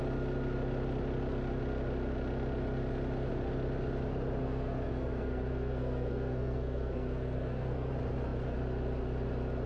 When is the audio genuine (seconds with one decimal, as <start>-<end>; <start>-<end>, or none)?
0.0-4.4; 7.9-9.7